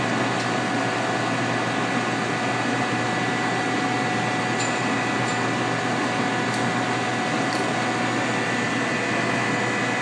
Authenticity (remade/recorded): recorded